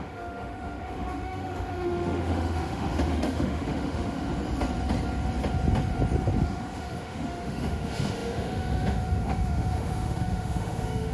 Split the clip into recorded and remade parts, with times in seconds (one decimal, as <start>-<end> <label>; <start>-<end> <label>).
0.0-4.3 remade; 4.3-6.4 recorded; 6.4-11.1 remade